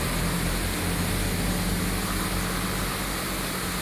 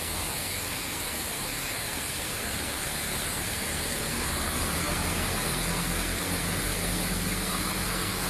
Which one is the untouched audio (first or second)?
first